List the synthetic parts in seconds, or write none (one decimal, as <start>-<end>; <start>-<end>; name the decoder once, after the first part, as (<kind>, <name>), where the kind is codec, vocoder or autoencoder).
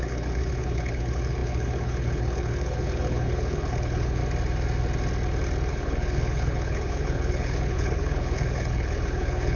0.0-4.2 (codec, HILCodec); 5.7-9.6